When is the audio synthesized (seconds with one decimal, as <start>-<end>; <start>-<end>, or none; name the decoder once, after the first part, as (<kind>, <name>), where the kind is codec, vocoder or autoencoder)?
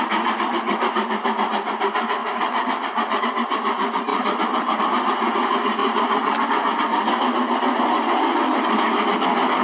2.2-3.2 (vocoder, BigVGAN v2); 4.1-4.8; 5.8-6.4